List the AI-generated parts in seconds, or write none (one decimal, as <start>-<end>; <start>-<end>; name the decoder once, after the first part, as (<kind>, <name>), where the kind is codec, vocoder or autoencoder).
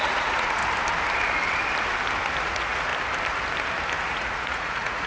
0.0-0.6 (vocoder, Vocos); 2.4-2.9; 4.0-5.1